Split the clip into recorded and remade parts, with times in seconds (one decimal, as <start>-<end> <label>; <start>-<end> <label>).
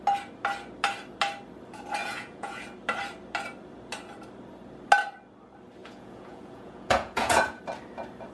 0.0-2.0 recorded; 2.0-2.6 remade; 2.6-5.8 recorded; 5.8-7.6 remade; 7.6-8.3 recorded